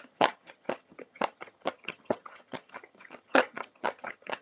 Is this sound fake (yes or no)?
yes